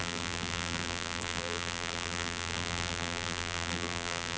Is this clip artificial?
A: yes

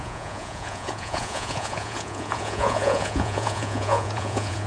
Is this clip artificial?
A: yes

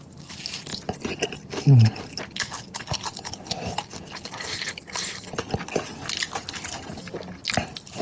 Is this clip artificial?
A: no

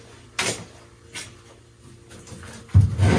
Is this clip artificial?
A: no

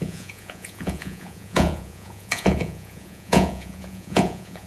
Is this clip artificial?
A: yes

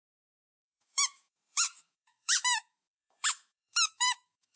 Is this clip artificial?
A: yes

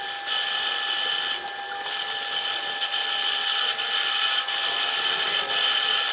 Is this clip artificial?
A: no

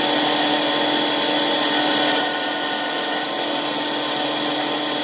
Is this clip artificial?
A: no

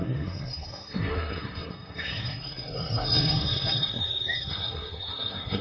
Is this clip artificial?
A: yes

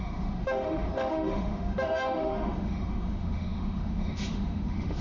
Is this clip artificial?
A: yes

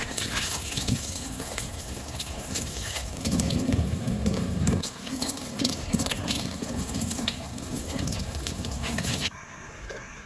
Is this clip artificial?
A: yes